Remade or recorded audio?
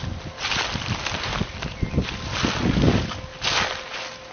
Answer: recorded